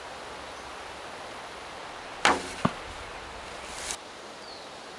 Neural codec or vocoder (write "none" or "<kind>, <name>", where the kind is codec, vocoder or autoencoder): none